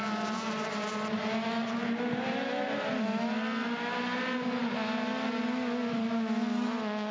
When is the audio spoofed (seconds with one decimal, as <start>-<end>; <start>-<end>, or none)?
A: none